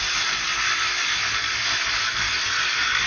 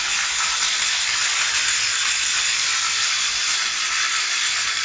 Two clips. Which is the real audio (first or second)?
first